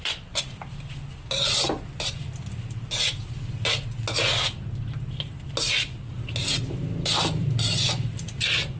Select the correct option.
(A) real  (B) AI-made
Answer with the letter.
A